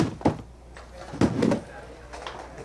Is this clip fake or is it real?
real